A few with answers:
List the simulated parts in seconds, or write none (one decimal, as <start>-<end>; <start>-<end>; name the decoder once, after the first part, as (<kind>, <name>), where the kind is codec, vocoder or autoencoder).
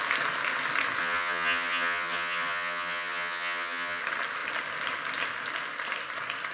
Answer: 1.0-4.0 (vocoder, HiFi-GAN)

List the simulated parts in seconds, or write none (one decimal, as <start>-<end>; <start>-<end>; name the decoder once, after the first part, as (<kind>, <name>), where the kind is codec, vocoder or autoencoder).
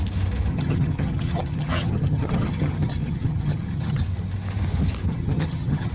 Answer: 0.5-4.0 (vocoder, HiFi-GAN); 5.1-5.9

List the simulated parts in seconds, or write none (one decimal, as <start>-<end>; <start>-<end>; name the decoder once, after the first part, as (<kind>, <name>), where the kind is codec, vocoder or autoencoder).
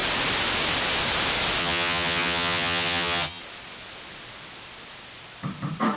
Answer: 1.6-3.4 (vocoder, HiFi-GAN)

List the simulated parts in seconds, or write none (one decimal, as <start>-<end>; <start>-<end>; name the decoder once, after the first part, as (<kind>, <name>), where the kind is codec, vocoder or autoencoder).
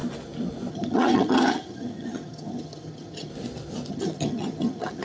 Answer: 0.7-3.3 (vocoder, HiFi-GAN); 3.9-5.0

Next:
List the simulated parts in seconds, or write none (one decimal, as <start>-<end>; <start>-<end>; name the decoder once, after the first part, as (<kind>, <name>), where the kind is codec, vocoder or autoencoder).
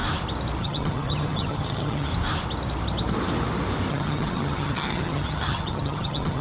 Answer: 0.6-2.1 (vocoder, HiFi-GAN); 3.9-6.4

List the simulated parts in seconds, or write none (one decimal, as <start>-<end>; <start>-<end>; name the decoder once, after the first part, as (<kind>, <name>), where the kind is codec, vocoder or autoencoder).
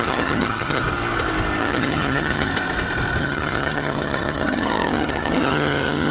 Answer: 0.0-0.8 (vocoder, HiFi-GAN); 1.6-2.5; 3.2-6.1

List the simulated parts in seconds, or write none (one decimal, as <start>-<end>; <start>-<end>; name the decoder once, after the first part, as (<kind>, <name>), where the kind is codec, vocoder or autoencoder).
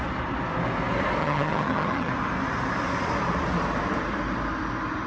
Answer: 1.2-2.1 (vocoder, HiFi-GAN)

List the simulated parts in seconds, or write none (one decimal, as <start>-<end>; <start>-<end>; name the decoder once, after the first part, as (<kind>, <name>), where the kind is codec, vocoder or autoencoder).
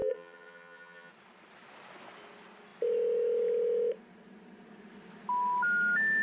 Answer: 0.0-1.1 (vocoder, HiFi-GAN)